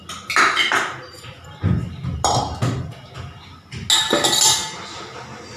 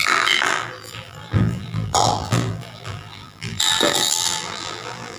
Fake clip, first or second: second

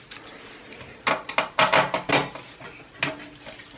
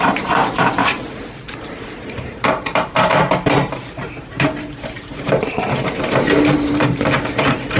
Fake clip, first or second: second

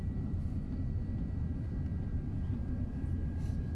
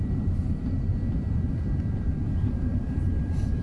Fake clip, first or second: second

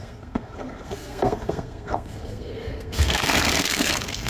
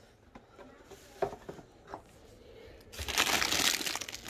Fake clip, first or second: first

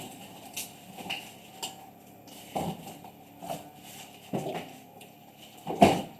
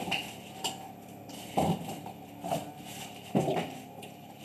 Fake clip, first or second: second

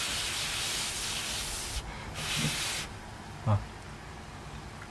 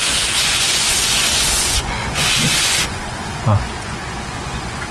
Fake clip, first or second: second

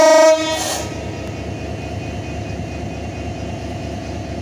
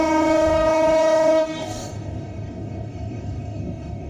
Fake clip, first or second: second